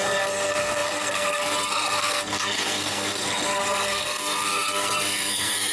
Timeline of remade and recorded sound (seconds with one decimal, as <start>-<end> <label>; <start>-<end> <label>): 0.0-5.7 remade